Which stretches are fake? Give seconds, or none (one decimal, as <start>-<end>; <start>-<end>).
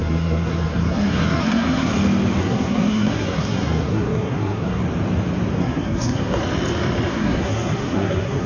0.0-1.9; 2.4-4.8; 5.6-6.4; 7.1-8.5